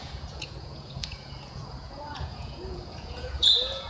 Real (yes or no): no